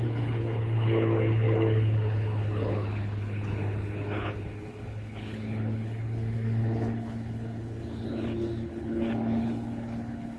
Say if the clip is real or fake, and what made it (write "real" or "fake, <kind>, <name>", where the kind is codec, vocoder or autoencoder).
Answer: fake, codec, HILCodec